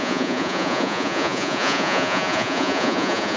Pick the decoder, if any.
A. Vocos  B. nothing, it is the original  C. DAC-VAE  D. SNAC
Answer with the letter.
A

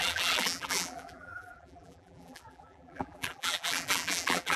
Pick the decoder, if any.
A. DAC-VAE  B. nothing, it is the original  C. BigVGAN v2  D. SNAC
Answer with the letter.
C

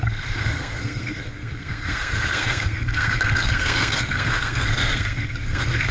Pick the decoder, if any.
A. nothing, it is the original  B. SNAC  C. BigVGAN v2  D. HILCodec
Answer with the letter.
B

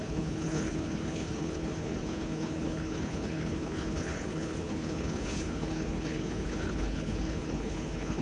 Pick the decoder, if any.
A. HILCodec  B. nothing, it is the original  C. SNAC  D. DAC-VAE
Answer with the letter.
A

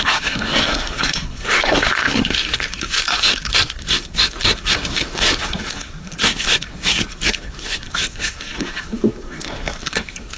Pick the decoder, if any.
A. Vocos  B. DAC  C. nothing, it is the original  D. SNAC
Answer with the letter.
D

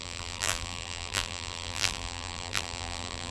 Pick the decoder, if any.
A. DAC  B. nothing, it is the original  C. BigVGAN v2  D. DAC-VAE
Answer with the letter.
C